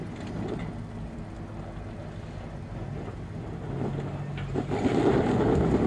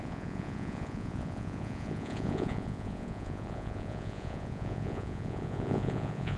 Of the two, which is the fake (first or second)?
second